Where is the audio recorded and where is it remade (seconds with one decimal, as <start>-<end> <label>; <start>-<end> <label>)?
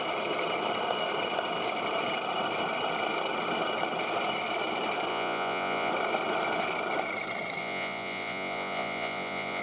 0.0-5.1 recorded; 5.1-5.9 remade; 5.9-7.6 recorded; 7.6-9.6 remade